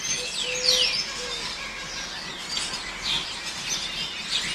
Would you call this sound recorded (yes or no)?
yes